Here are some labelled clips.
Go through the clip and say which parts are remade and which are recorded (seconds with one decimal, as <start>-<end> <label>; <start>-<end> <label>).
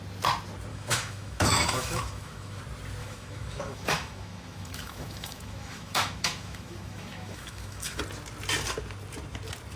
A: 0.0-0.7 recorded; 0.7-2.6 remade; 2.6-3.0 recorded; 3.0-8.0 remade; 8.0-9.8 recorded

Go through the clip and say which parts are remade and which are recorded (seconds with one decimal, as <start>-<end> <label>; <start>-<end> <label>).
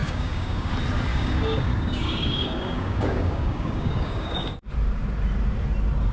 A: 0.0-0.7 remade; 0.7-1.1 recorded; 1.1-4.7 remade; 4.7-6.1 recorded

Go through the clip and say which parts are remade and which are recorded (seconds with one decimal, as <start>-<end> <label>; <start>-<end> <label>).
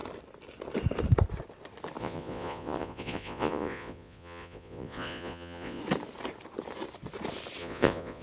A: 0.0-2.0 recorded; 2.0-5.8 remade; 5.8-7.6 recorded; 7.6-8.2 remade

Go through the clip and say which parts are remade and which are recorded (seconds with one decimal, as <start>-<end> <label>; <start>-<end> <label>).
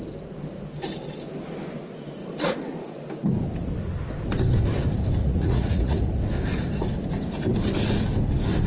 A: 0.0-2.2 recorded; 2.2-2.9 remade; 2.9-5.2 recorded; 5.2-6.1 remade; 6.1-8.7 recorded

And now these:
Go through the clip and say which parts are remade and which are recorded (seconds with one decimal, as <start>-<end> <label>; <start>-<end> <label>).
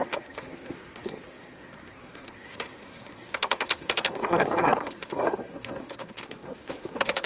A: 0.0-7.3 remade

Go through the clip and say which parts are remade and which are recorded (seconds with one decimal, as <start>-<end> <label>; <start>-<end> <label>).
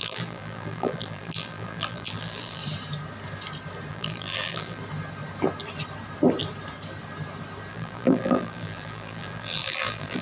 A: 0.0-2.6 remade; 2.6-3.9 recorded; 3.9-4.8 remade; 4.8-7.7 recorded; 7.7-10.2 remade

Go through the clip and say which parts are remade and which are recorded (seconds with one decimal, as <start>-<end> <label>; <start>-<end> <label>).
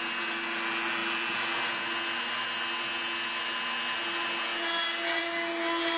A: 0.0-6.0 recorded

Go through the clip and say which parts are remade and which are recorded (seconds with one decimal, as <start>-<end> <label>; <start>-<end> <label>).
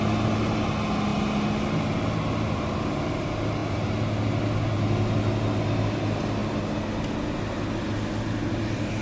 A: 0.0-9.0 recorded